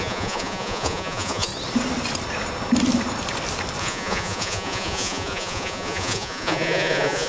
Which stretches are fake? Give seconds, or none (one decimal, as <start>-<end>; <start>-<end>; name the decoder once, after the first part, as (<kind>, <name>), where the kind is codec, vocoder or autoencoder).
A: 0.0-1.5 (vocoder, Vocos); 3.8-7.3